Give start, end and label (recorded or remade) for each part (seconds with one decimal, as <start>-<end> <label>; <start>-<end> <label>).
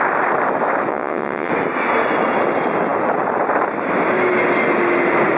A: 0.0-0.9 recorded; 0.9-1.5 remade; 1.5-5.4 recorded